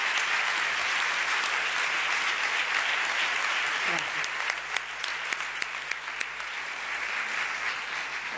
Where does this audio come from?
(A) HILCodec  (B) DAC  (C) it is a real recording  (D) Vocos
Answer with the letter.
C